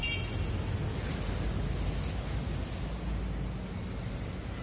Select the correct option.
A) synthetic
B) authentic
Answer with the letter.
B